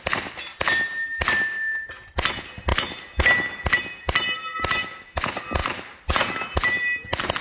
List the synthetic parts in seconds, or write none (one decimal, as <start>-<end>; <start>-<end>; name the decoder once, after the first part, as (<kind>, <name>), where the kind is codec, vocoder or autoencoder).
5.6-7.4 (vocoder, BigVGAN v2)